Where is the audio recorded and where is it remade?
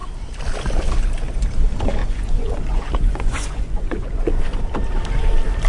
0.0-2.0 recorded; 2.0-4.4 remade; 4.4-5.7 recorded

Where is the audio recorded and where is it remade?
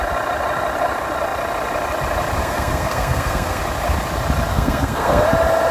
0.0-2.4 recorded; 2.4-3.6 remade; 3.6-4.5 recorded; 4.5-5.2 remade; 5.2-5.7 recorded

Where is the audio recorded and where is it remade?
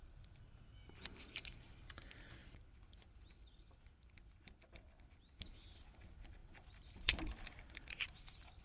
0.0-0.7 remade; 0.7-2.4 recorded; 2.4-4.9 remade; 4.9-6.4 recorded; 6.4-8.2 remade; 8.2-8.6 recorded